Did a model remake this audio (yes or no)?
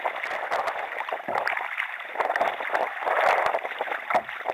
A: no